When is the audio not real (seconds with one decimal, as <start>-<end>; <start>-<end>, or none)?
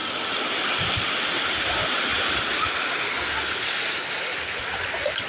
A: none